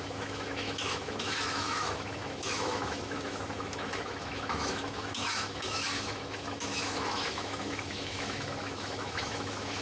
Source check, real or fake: fake